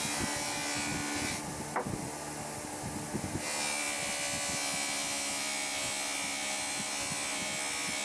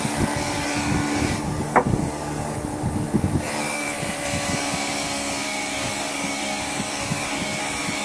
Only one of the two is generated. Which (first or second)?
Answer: second